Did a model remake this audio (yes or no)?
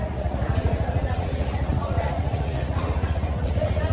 yes